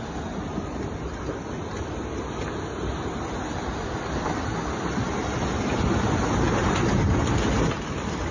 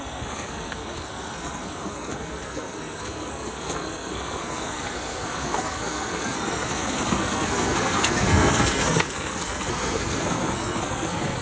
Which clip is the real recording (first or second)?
first